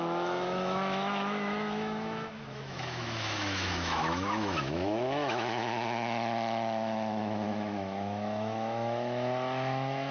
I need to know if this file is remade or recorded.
remade